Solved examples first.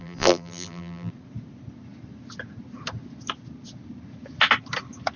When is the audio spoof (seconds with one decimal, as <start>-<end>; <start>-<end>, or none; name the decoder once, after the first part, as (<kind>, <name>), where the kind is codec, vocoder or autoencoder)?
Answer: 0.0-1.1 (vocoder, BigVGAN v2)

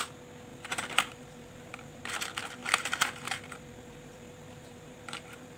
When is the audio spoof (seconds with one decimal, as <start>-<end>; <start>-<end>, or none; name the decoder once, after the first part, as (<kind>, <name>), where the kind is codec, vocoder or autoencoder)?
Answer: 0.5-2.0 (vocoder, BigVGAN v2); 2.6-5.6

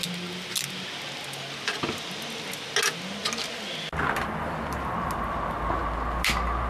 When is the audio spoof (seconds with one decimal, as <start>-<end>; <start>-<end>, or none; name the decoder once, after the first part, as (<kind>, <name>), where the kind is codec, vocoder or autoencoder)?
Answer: none

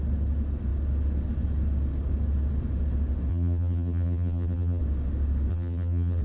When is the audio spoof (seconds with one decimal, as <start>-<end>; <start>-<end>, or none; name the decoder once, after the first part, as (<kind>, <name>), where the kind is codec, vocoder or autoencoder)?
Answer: 3.3-4.8 (vocoder, BigVGAN v2); 5.5-6.2

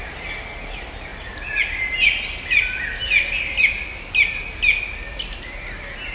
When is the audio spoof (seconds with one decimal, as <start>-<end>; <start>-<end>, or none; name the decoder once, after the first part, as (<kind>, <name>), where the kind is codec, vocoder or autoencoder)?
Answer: none